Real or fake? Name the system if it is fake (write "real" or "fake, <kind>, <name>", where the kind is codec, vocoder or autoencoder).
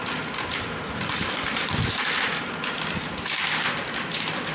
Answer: real